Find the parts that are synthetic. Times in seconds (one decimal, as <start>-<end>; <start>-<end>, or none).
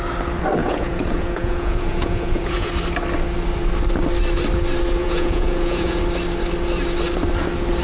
0.6-2.7; 5.0-6.0